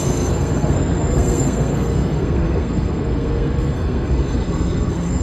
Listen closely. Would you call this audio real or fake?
fake